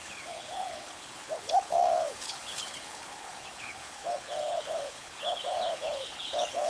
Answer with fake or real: fake